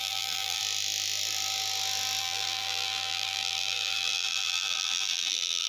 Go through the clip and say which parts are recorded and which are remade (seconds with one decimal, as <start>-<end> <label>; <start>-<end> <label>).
0.0-0.6 remade; 0.6-2.2 recorded; 2.2-5.7 remade